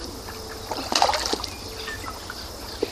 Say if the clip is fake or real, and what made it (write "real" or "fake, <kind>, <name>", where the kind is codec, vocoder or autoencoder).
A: real